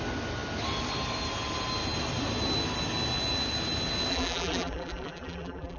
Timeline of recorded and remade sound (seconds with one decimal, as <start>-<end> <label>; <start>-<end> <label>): 0.0-4.1 recorded; 4.1-5.8 remade